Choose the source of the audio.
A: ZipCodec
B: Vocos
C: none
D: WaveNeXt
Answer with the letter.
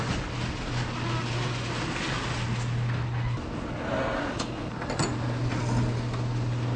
C